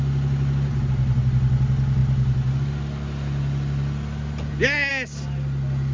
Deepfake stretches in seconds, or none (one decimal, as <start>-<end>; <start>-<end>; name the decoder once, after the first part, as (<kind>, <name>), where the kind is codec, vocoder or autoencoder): none